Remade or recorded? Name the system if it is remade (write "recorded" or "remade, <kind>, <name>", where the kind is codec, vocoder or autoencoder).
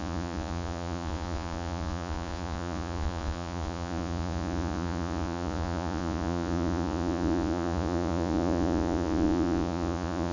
remade, vocoder, Vocos